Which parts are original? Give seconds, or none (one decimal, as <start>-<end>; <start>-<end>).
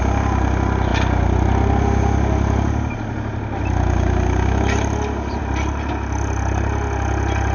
0.0-7.5